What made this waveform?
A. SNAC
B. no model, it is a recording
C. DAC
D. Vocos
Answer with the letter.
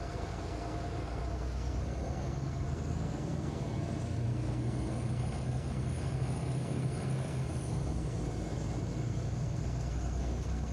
A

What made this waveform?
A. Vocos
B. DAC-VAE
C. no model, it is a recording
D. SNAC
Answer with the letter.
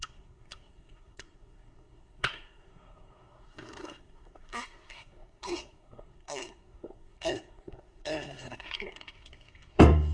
D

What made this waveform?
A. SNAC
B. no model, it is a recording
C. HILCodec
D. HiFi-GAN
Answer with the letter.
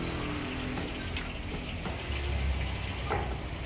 B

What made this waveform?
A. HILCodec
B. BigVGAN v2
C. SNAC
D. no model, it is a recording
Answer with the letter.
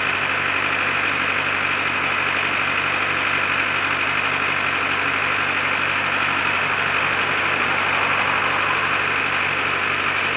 D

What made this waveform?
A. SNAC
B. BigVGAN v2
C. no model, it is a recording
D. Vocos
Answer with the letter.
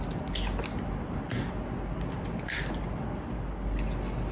C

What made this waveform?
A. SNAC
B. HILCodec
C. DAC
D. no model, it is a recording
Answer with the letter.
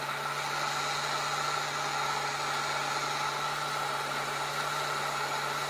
D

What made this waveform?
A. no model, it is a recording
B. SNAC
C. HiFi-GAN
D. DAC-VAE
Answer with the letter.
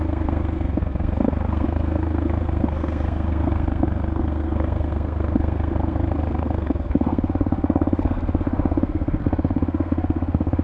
B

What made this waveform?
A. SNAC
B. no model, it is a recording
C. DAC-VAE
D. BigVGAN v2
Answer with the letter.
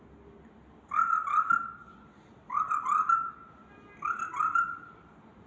B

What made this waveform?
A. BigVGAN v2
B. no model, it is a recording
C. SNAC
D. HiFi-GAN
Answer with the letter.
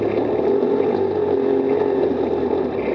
B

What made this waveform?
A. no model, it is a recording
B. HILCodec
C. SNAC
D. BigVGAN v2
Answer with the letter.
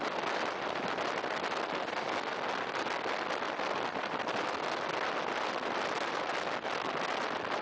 A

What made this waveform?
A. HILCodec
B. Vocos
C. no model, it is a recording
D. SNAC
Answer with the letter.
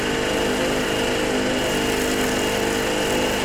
C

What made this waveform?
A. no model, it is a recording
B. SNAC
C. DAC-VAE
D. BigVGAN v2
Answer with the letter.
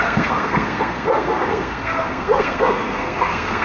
B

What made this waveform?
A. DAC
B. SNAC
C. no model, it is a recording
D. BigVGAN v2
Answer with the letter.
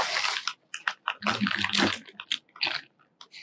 C